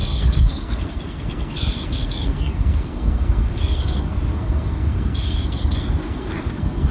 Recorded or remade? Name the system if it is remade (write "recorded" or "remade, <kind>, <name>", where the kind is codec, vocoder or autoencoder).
remade, codec, SNAC